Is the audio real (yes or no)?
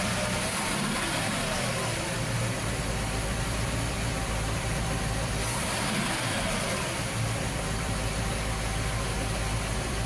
no